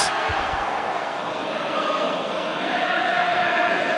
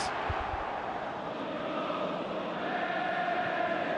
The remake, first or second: first